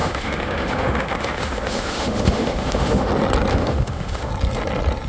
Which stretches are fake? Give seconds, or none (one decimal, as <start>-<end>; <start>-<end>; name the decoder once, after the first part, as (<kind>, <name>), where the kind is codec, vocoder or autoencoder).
0.0-3.1 (autoencoder, DAC-VAE); 3.5-4.3